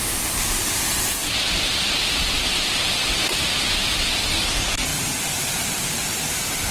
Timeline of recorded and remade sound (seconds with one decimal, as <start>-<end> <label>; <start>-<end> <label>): 0.0-2.5 recorded; 2.5-3.4 remade; 3.4-6.7 recorded